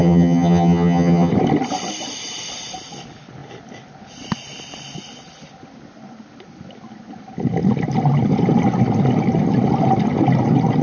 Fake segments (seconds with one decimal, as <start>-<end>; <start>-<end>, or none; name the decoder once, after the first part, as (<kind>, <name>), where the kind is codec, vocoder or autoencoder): 0.0-1.3 (vocoder, HiFi-GAN)

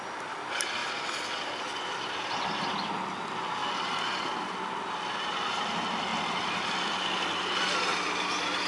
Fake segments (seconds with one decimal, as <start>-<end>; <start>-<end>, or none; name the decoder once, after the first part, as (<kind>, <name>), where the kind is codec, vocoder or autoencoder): none

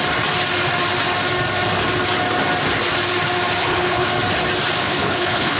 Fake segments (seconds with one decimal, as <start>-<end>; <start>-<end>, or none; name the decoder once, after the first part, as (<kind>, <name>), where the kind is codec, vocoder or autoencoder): 3.6-4.1 (codec, HILCodec); 4.8-5.6

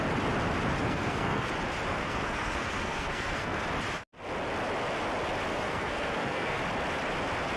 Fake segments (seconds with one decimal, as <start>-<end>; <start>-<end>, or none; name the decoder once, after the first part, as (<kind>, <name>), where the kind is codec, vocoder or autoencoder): 0.8-1.5 (codec, SNAC); 1.9-3.6; 5.5-6.6

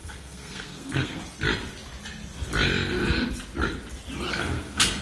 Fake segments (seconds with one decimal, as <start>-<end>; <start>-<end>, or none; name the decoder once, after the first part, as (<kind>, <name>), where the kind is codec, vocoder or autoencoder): 0.0-1.2 (codec, SNAC); 4.3-5.0

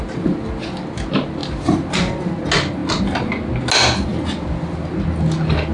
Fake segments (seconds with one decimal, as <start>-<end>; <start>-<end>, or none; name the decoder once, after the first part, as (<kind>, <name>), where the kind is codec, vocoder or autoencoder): none

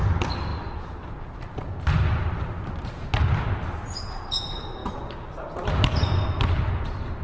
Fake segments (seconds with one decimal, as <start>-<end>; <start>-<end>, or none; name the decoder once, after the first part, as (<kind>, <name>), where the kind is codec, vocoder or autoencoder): none